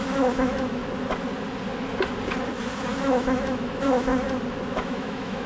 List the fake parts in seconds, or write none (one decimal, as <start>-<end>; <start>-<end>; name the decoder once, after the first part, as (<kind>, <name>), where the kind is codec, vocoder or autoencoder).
0.0-0.8 (autoencoder, DAC-VAE); 3.0-4.1; 4.7-5.5